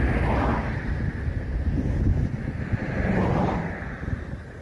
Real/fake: real